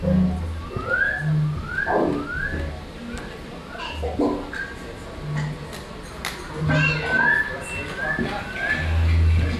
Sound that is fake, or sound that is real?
real